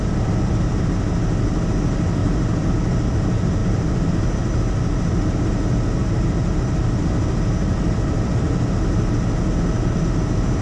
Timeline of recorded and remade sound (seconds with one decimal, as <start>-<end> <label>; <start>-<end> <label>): 0.0-2.2 recorded; 2.2-2.7 remade; 2.7-3.6 recorded; 3.6-4.1 remade; 4.1-7.6 recorded; 7.6-9.1 remade; 9.1-10.6 recorded